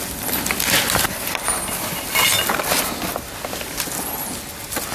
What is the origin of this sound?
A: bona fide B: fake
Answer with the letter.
A